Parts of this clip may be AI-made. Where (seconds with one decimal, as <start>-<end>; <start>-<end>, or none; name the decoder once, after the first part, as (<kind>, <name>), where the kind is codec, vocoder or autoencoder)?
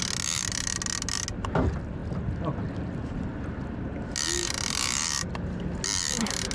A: none